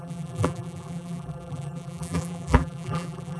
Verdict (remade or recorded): remade